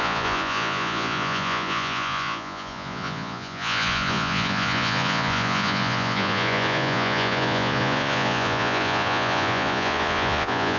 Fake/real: fake